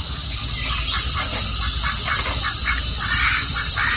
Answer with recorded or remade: recorded